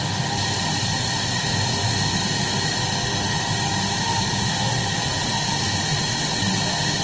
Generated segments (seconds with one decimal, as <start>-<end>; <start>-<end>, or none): 5.9-6.6